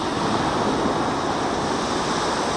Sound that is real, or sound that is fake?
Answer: real